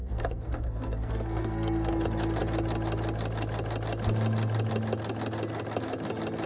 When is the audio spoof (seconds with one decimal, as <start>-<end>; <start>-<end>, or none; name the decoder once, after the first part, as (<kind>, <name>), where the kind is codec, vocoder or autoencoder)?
0.0-1.9 (codec, SNAC)